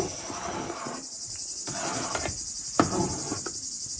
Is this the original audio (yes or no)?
yes